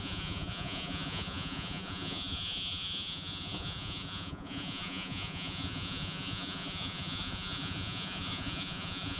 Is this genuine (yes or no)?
no